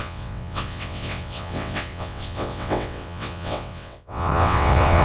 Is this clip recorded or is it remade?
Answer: remade